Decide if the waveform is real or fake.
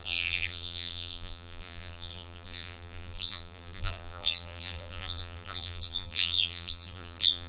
fake